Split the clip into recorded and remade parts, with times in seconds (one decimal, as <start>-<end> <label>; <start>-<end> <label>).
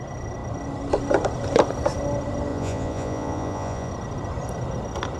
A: 0.0-2.5 recorded; 2.5-3.9 remade; 3.9-5.2 recorded